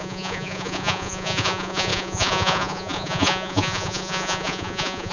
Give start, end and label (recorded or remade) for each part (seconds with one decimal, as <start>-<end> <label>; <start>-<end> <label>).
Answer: 0.0-5.1 remade